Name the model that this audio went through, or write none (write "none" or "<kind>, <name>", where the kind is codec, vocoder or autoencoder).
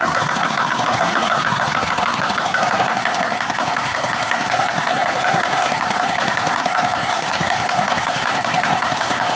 codec, SNAC